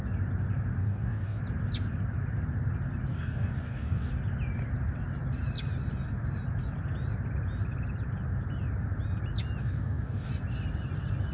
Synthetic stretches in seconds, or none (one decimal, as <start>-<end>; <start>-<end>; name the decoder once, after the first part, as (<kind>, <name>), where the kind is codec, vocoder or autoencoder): 0.8-1.4 (codec, DAC); 3.1-4.1; 9.6-10.3